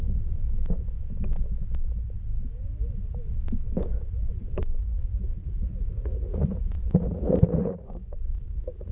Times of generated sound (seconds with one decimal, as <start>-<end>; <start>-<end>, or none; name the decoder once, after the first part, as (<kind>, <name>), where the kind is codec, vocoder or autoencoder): 4.8-8.9 (vocoder, Vocos)